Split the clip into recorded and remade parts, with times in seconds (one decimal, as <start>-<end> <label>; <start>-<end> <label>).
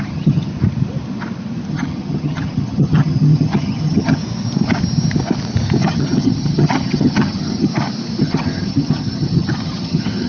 0.0-0.5 remade; 0.5-1.7 recorded; 1.7-4.2 remade; 4.2-5.8 recorded; 5.8-7.7 remade; 7.7-8.2 recorded; 8.2-10.3 remade